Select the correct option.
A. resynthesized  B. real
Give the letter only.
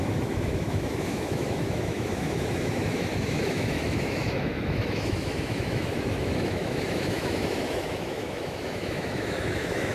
A